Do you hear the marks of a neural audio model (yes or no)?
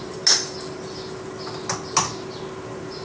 no